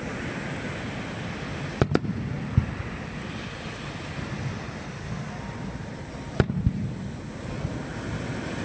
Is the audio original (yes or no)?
yes